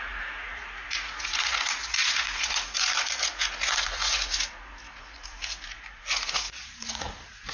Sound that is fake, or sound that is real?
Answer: fake